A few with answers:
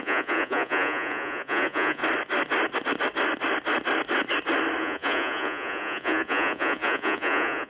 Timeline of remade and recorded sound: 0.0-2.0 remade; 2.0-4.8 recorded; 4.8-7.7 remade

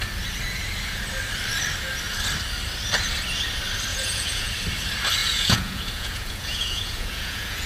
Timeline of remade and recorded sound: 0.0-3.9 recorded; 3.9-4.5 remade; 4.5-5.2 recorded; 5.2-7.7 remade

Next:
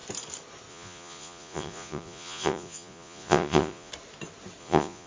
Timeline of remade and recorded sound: 0.0-0.7 recorded; 0.7-3.9 remade; 3.9-4.6 recorded; 4.6-5.1 remade

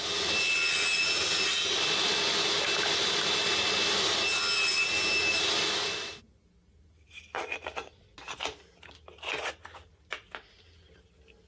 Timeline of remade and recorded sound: 0.0-11.5 recorded